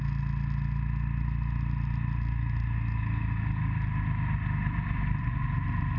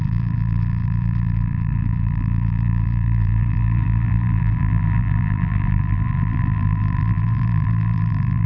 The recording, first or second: first